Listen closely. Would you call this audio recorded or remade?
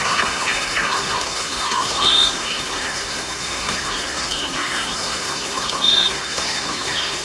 remade